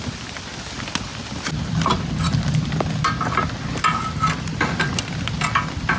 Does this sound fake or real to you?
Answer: real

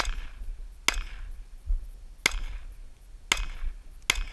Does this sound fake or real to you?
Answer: real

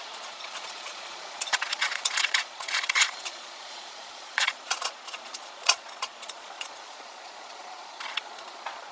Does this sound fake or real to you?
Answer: fake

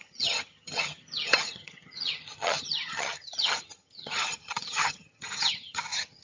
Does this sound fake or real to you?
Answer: fake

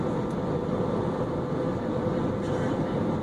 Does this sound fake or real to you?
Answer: real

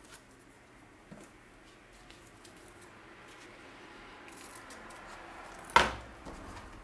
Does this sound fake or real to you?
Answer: real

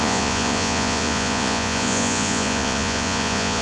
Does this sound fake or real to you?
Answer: fake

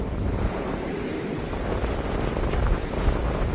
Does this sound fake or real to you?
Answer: real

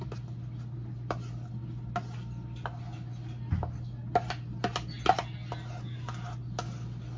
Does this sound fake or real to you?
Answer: real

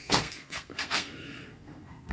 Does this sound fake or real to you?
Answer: fake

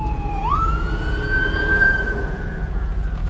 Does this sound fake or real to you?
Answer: fake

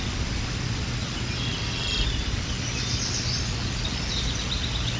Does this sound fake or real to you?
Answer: real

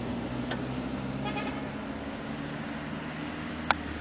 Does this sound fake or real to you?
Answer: real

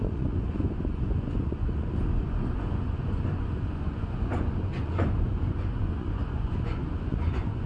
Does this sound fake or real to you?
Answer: fake